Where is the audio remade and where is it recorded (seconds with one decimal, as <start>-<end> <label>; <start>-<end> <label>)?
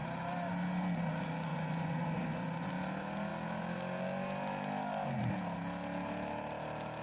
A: 0.0-1.5 recorded; 1.5-2.7 remade; 2.7-7.0 recorded